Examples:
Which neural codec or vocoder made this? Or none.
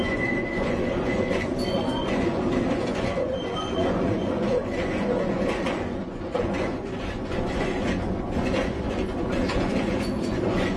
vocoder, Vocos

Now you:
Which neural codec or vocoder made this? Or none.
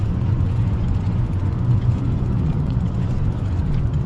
vocoder, Vocos